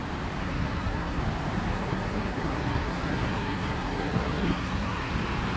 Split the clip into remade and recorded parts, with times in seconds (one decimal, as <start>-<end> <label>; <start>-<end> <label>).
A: 0.0-0.4 recorded; 0.4-1.2 remade; 1.2-1.7 recorded; 1.7-5.1 remade; 5.1-5.6 recorded